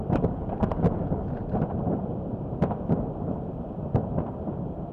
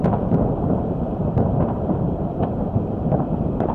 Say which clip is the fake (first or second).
second